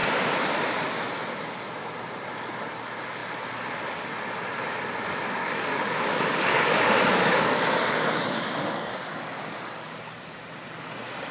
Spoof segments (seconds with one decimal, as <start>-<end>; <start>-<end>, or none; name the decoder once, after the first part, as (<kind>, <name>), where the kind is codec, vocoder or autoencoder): 5.4-10.0 (codec, DAC)

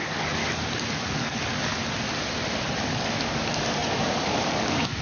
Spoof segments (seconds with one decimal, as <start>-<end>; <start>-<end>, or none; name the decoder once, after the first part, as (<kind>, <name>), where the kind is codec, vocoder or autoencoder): 0.0-0.4 (codec, DAC); 1.0-1.7; 2.8-5.0